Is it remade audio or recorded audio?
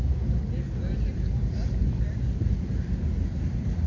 recorded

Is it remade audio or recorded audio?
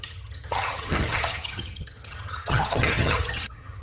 remade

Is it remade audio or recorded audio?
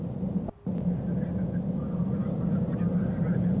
recorded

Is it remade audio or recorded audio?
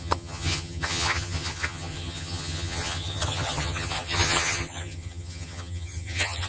remade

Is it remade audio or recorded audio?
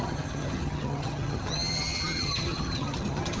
remade